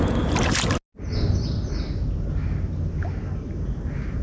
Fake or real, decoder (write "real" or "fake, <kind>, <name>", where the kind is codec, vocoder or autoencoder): real